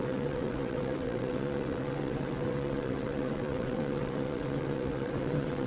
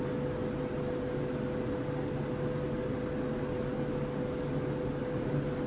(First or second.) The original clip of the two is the second